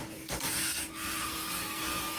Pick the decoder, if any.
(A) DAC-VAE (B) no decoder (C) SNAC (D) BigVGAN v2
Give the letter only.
C